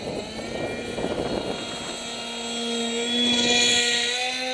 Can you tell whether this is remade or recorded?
recorded